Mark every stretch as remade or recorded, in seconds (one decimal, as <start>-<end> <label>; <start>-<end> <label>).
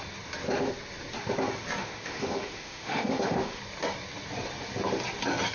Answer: 0.0-1.8 recorded; 1.8-3.6 remade; 3.6-5.5 recorded